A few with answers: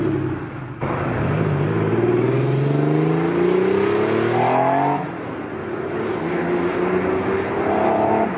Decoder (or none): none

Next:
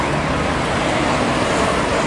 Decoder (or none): none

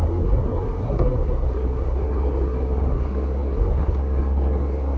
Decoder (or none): codec, SNAC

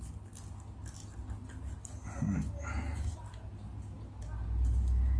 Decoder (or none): none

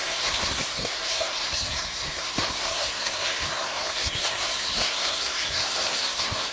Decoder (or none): codec, SNAC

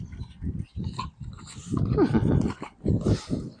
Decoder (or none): none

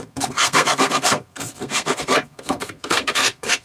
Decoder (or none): codec, SNAC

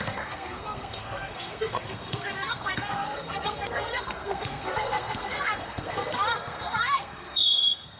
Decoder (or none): codec, SNAC